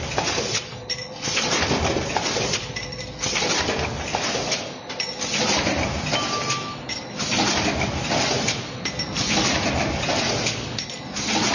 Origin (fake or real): real